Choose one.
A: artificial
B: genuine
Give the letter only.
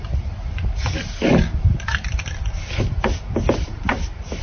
B